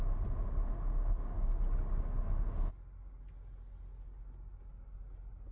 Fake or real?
real